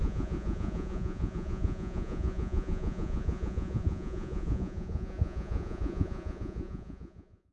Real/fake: fake